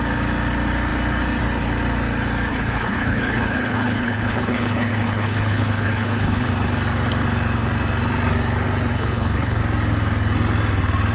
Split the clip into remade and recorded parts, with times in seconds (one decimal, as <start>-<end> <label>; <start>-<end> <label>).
0.0-2.5 recorded; 2.5-6.5 remade; 6.5-8.9 recorded; 8.9-9.6 remade; 9.6-11.1 recorded

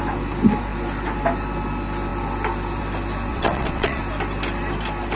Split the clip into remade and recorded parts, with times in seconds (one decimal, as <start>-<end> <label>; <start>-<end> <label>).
0.0-3.3 recorded; 3.3-4.0 remade; 4.0-5.2 recorded

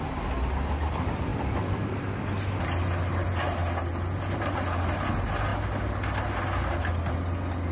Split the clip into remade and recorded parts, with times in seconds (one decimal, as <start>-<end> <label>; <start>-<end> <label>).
0.0-7.7 recorded

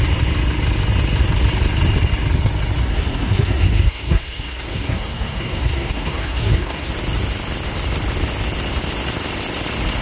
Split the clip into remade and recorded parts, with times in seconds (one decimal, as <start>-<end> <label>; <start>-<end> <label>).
0.0-2.8 recorded; 2.8-6.9 remade; 6.9-10.0 recorded

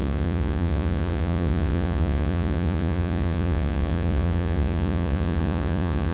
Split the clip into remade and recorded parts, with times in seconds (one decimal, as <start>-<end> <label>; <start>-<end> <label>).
0.0-6.1 remade